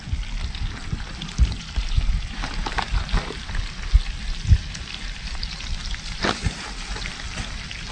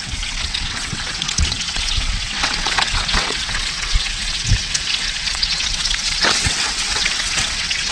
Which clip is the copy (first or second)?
second